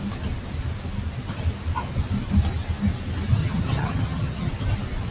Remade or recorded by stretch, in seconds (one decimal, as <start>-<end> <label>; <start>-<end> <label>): 0.0-3.4 recorded; 3.4-4.5 remade; 4.5-5.1 recorded